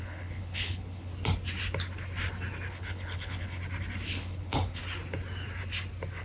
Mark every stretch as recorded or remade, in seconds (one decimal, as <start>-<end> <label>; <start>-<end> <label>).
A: 0.0-1.1 remade; 1.1-2.7 recorded; 2.7-3.6 remade; 3.6-4.1 recorded; 4.1-4.8 remade; 4.8-6.2 recorded

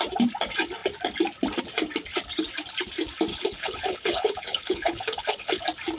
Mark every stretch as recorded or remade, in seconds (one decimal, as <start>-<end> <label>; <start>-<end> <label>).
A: 0.0-3.3 recorded; 3.3-5.6 remade; 5.6-6.0 recorded

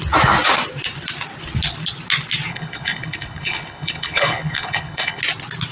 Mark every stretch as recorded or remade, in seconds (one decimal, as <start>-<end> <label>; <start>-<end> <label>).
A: 0.0-2.5 recorded; 2.5-5.2 remade; 5.2-5.7 recorded

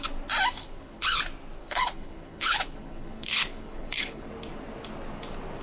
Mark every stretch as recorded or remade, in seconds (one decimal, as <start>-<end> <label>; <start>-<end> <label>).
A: 0.0-0.6 recorded; 0.6-1.2 remade; 1.2-1.6 recorded; 1.6-4.3 remade; 4.3-5.6 recorded

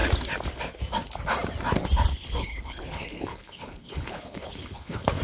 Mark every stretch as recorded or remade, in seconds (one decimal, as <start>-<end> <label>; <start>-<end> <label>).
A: 0.0-2.1 recorded; 2.1-5.2 remade

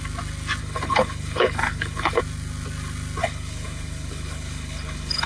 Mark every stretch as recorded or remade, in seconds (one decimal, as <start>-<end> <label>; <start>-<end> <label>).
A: 0.0-0.6 recorded; 0.6-2.2 remade; 2.2-3.2 recorded; 3.2-5.3 remade